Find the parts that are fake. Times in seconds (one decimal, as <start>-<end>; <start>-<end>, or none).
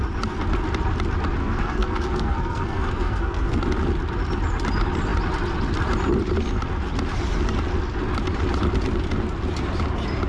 1.4-3.6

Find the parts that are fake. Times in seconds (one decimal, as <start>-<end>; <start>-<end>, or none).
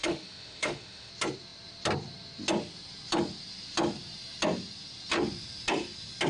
0.0-1.1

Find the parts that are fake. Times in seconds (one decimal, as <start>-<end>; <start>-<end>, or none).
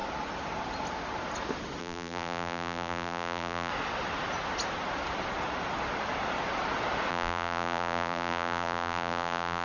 1.8-3.7; 7.1-9.6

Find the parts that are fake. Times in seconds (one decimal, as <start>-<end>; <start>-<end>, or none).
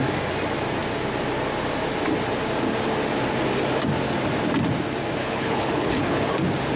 5.2-6.3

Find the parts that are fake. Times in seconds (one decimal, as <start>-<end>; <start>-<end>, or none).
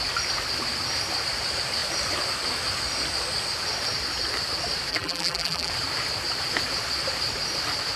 4.9-5.7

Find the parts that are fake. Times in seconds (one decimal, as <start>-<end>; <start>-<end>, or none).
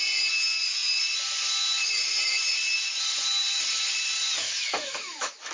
4.4-5.5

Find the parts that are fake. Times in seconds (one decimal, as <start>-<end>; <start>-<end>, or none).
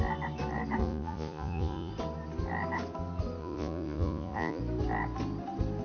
0.8-1.9; 3.4-4.6